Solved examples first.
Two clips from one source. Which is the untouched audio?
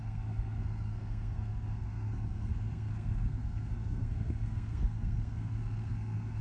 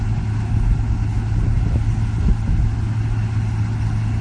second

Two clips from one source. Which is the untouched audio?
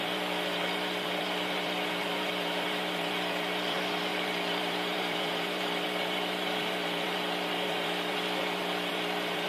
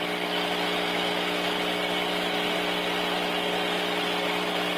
second